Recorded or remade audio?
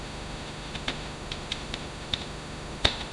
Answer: remade